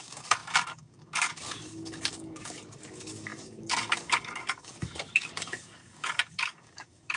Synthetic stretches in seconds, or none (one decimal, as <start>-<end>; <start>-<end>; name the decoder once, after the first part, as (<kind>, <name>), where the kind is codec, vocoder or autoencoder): 0.0-7.2 (codec, DAC)